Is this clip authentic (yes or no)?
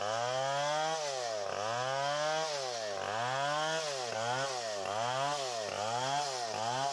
yes